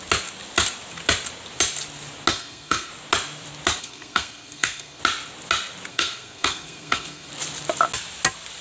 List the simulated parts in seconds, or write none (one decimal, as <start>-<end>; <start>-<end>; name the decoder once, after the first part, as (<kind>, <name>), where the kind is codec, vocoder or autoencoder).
2.3-2.9 (codec, SNAC); 3.8-5.0; 5.9-7.3